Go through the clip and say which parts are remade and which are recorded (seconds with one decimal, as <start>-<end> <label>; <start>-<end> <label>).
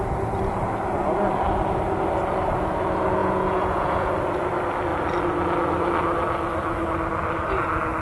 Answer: 0.0-3.2 recorded; 3.2-4.1 remade; 4.1-8.0 recorded